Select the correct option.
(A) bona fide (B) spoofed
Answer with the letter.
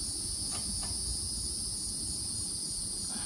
B